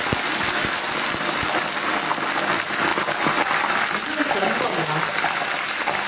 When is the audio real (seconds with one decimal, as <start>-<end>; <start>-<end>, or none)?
0.0-6.1